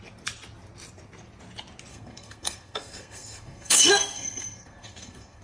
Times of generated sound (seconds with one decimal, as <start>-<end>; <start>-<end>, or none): 1.9-5.4